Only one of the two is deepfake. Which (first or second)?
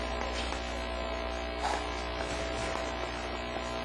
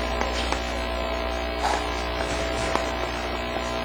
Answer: second